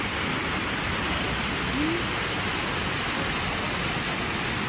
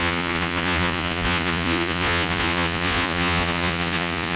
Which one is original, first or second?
first